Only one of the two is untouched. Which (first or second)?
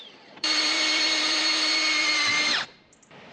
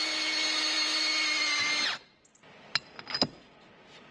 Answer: second